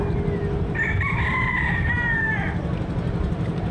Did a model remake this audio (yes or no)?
no